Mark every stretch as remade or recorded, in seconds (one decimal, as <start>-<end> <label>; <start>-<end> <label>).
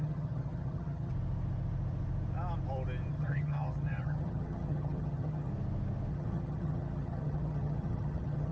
0.0-1.1 remade; 1.1-3.1 recorded; 3.1-5.5 remade; 5.5-6.1 recorded; 6.1-8.5 remade